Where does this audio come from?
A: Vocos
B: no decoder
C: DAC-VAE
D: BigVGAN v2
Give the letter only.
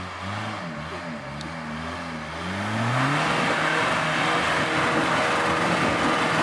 B